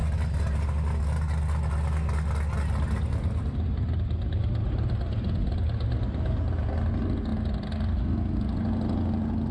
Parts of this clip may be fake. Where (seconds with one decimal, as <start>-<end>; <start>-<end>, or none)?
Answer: none